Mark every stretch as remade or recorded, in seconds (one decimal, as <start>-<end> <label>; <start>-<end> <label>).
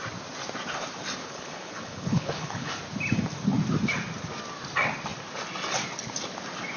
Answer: 0.0-1.2 recorded; 1.2-2.7 remade; 2.7-6.8 recorded